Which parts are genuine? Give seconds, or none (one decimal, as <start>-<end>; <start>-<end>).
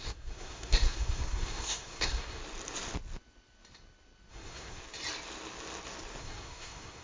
2.4-4.3; 4.8-6.2